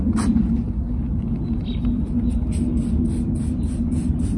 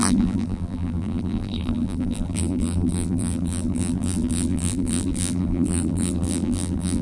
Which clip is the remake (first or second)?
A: second